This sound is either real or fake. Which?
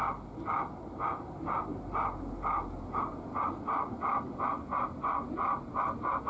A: real